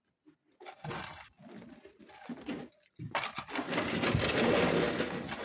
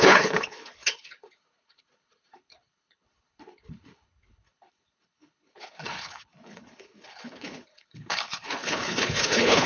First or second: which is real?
first